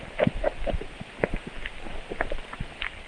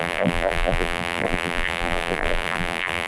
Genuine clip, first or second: first